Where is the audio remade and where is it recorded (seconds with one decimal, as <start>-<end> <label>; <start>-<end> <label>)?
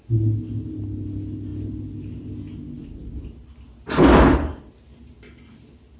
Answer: 0.0-6.0 recorded